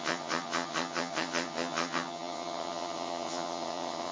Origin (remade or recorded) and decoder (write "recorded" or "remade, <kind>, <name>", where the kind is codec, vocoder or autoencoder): remade, vocoder, HiFi-GAN